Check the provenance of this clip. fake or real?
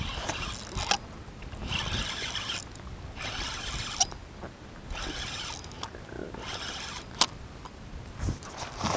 real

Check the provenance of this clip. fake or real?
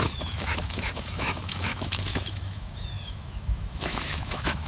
fake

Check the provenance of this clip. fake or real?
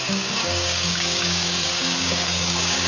fake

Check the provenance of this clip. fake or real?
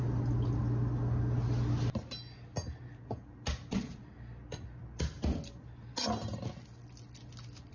real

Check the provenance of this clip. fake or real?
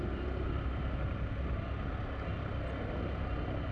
real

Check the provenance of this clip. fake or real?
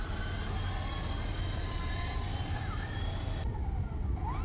real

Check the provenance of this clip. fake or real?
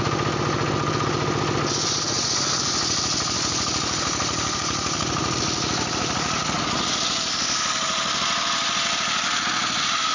real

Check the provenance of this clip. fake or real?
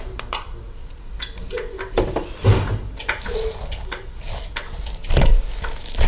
real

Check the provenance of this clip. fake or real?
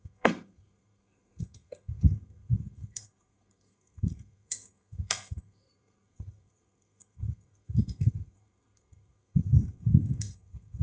fake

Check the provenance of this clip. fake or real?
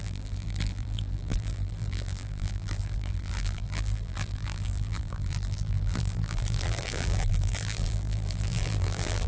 fake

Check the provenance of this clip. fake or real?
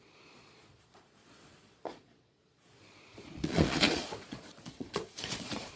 fake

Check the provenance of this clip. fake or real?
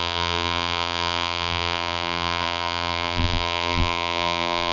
fake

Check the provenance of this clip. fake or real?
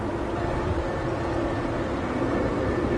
real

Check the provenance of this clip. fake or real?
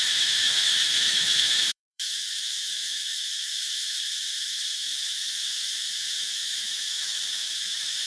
fake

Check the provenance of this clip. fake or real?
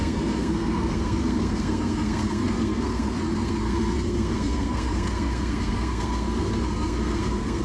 fake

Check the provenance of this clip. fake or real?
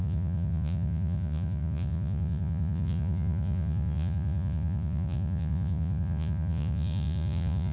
fake